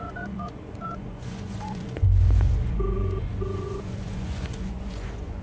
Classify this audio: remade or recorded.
remade